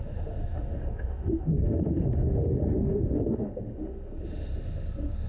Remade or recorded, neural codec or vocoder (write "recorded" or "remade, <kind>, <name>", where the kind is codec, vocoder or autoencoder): remade, autoencoder, DAC-VAE